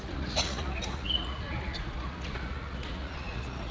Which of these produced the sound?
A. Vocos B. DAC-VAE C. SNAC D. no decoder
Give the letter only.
A